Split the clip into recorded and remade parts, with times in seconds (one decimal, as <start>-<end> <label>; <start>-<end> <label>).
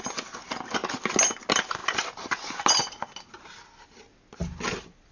0.0-5.1 recorded